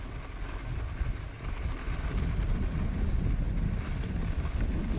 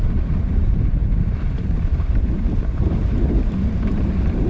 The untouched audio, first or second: first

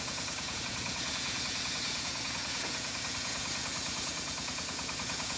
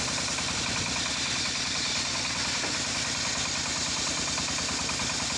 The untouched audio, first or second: second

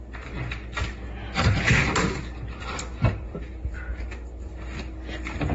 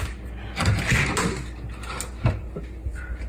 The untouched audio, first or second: second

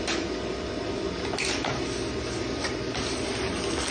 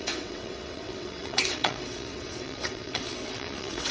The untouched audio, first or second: first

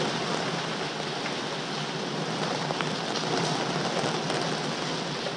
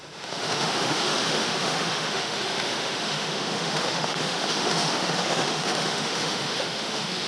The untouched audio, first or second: first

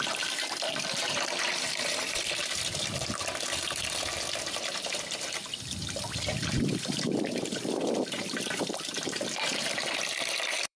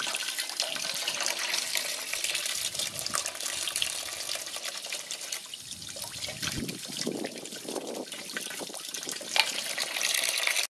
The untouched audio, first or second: second